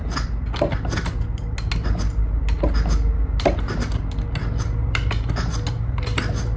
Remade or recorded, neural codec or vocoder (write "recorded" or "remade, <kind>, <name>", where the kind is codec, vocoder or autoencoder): recorded